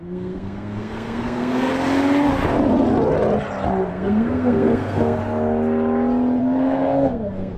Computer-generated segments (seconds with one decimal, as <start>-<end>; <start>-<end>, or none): 0.0-1.7; 3.9-5.2; 6.4-7.6